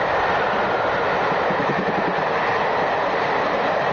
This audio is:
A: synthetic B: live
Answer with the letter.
B